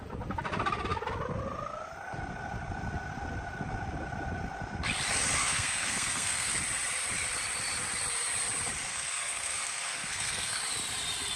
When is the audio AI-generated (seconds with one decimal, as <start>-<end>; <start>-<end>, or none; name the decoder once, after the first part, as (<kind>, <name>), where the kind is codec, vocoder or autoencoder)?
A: 5.4-6.5 (codec, SNAC); 8.9-10.6